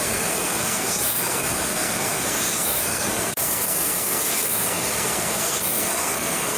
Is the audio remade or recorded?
remade